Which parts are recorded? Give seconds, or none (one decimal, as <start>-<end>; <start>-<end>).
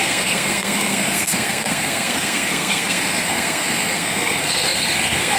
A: none